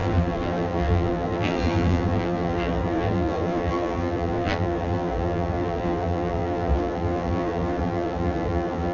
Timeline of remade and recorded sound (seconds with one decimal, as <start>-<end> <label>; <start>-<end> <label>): 0.0-8.9 remade